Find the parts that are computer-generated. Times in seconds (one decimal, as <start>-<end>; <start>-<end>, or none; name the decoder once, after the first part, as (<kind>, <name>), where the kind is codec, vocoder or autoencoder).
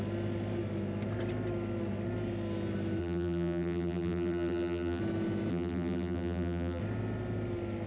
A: 3.0-5.0 (vocoder, BigVGAN v2); 5.5-6.8